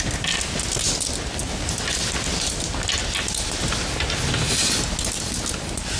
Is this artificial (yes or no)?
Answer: no